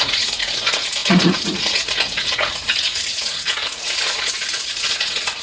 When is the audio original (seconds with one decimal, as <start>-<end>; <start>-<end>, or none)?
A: none